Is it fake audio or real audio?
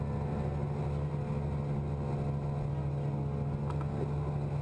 real